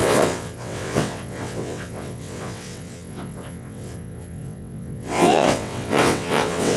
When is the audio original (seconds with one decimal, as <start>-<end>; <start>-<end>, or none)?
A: none